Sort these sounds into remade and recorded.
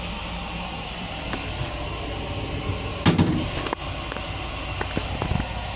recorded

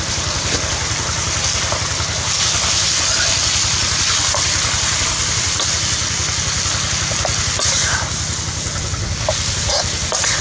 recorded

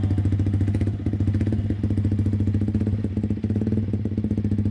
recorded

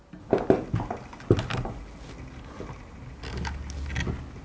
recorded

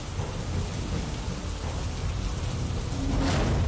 recorded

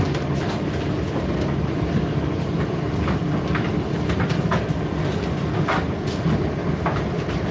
recorded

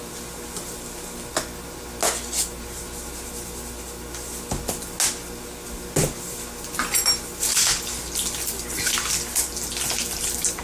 recorded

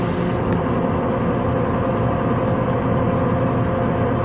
recorded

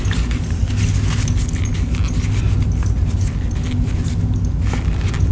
recorded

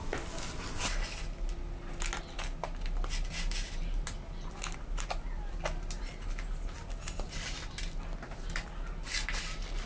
recorded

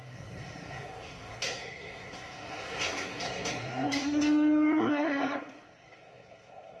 remade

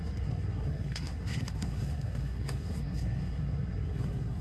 remade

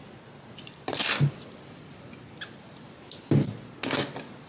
recorded